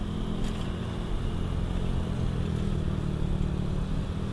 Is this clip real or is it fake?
real